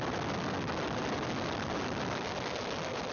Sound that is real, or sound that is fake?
real